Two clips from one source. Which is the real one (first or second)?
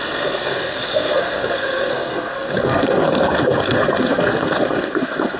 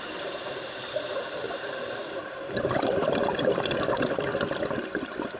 second